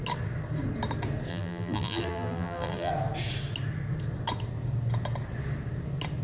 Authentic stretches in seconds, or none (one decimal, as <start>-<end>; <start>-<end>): 0.0-1.3; 2.9-6.2